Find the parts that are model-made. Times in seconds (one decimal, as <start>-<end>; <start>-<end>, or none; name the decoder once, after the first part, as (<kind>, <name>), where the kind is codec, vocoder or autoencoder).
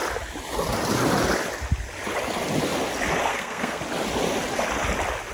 3.3-3.8 (codec, SNAC)